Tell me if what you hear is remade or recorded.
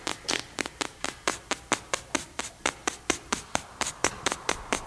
remade